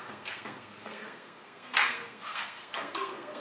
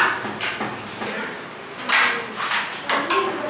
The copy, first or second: first